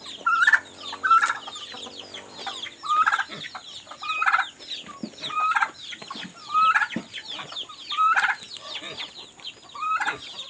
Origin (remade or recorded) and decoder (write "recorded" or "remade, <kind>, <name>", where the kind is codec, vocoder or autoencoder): recorded